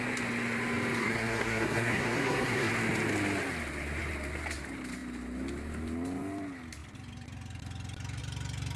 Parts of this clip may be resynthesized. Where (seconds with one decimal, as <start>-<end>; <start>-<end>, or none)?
1.0-2.7